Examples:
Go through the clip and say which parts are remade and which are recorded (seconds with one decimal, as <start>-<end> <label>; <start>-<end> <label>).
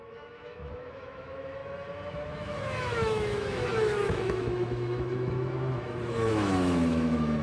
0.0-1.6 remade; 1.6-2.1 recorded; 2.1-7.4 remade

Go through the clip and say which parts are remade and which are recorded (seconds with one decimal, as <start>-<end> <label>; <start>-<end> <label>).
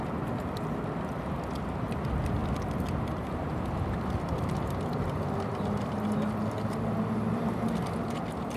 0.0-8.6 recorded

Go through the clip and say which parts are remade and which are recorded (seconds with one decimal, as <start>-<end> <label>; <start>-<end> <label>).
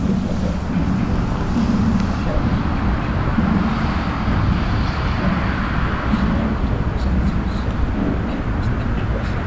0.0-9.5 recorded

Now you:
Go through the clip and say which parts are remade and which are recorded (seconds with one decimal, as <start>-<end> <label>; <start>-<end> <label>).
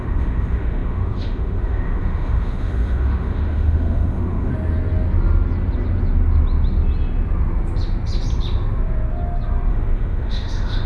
0.0-4.5 remade; 4.5-9.7 recorded; 9.7-10.9 remade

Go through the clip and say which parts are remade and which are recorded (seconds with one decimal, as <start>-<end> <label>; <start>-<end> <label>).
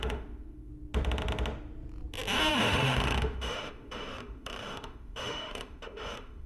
0.0-0.7 remade; 0.7-2.5 recorded; 2.5-6.5 remade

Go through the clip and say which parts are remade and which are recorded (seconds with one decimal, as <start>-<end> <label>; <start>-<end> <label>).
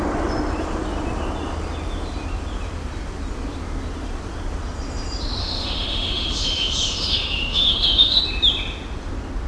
0.0-5.4 recorded; 5.4-8.2 remade; 8.2-9.5 recorded